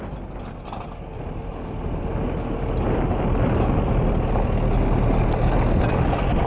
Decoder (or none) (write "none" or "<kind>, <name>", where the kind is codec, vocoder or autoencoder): none